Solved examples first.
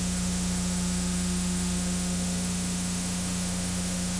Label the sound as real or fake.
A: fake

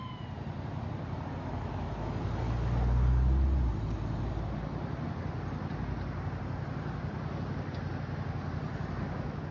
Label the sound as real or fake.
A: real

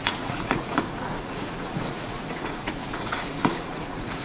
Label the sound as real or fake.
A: fake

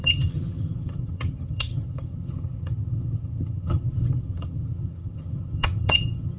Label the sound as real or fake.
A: fake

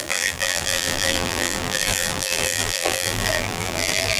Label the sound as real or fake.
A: fake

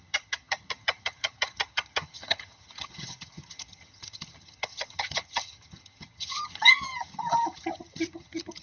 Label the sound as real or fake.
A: fake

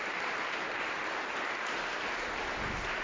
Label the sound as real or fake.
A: real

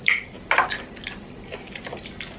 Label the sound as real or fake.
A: real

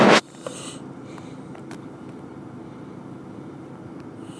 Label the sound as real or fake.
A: real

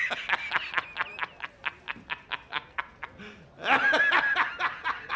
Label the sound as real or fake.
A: real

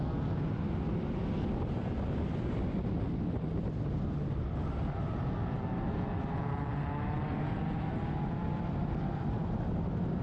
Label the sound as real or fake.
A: real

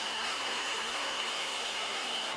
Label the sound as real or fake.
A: fake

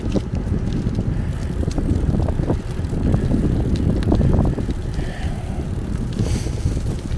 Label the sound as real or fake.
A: real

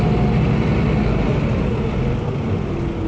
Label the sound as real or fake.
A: real